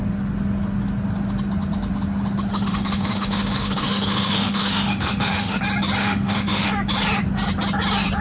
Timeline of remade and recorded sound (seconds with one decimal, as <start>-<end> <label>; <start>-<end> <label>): 0.0-2.5 recorded; 2.5-5.6 remade; 5.6-6.0 recorded; 6.0-6.7 remade; 6.7-8.2 recorded